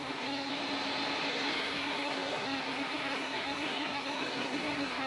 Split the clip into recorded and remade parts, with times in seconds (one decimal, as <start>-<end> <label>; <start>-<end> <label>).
0.0-0.5 remade; 0.5-1.3 recorded; 1.3-5.1 remade